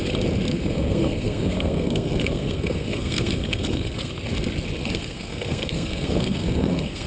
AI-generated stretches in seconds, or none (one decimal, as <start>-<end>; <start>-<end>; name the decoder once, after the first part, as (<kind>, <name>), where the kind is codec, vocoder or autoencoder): 0.5-4.1 (codec, SNAC); 4.8-7.1